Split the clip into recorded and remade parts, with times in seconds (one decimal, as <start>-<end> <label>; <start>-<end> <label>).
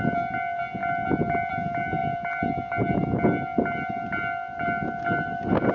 0.0-5.7 recorded